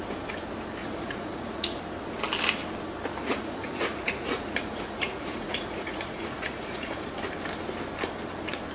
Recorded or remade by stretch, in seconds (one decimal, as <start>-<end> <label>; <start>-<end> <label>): 0.0-0.8 recorded; 0.8-1.8 remade; 1.8-3.1 recorded; 3.1-7.1 remade; 7.1-8.7 recorded

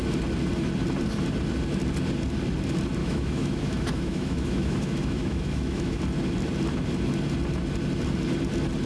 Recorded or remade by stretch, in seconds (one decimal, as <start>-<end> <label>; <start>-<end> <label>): 0.0-3.0 recorded; 3.0-6.0 remade; 6.0-8.9 recorded

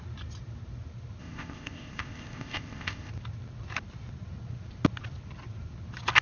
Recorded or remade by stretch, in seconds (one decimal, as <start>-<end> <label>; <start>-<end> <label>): 0.0-1.2 recorded; 1.2-3.1 remade; 3.1-6.2 recorded